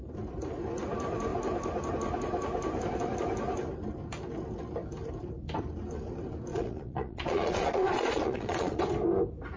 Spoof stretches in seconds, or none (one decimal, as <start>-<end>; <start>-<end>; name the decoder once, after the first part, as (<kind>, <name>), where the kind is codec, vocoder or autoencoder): 6.5-8.8 (vocoder, Vocos)